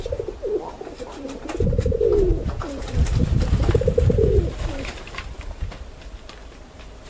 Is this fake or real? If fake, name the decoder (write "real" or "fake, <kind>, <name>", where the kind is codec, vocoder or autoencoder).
real